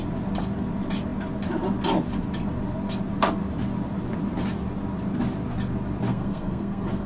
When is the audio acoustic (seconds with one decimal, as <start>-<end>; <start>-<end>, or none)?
0.0-6.1